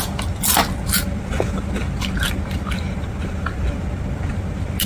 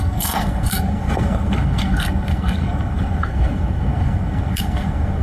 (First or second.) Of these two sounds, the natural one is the first